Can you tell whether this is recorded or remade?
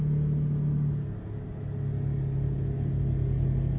recorded